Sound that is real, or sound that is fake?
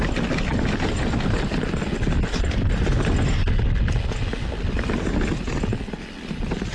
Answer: real